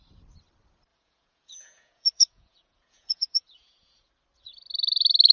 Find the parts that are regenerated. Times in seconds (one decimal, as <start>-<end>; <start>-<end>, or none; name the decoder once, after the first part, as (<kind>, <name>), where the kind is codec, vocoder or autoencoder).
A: 0.9-4.1 (vocoder, Vocos)